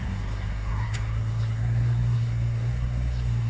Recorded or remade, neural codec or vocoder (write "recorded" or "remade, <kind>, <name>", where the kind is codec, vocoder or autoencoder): remade, codec, SNAC